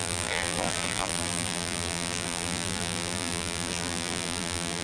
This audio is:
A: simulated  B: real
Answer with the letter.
A